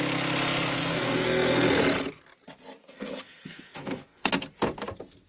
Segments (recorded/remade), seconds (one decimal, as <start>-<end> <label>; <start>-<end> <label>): 0.0-0.8 recorded; 0.8-1.8 remade; 1.8-2.8 recorded; 2.8-4.3 remade; 4.3-5.3 recorded